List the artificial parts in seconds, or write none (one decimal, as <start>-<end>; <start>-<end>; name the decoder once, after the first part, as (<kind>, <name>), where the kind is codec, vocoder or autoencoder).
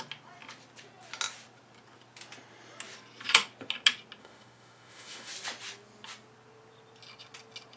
4.2-5.3 (autoencoder, DAC-VAE)